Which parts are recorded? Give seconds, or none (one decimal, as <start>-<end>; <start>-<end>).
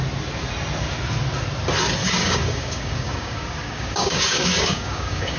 0.0-2.0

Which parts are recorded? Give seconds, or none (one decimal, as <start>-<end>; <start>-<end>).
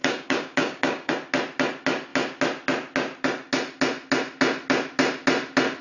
1.1-5.8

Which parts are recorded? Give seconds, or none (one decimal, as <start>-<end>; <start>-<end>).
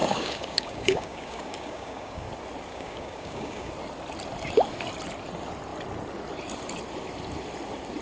2.3-2.7; 3.7-8.0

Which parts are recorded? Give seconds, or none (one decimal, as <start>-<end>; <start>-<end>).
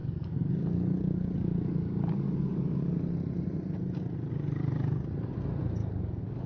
3.0-5.8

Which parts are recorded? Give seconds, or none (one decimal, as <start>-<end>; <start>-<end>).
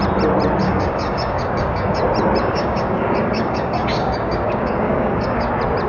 0.0-0.6; 2.0-2.4; 5.5-5.9